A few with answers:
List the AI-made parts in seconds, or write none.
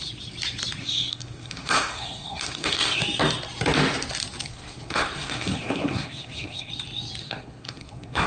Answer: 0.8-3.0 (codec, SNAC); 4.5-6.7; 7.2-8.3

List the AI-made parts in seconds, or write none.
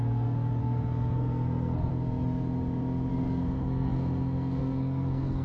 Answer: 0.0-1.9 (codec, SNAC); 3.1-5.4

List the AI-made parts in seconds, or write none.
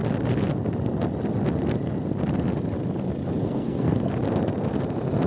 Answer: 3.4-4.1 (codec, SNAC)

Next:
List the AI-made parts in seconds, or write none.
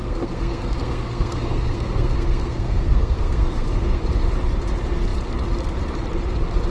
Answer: 0.0-4.0 (codec, SNAC)